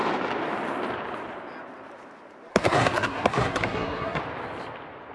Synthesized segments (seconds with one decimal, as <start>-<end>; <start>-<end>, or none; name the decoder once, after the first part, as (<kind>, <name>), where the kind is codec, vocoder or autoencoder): 2.5-4.2 (codec, SNAC)